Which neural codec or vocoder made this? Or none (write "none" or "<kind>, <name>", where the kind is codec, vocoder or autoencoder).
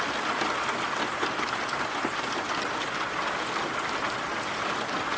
none